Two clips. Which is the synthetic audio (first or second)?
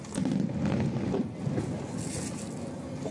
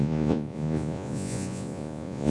second